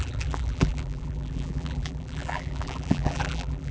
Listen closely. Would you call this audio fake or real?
fake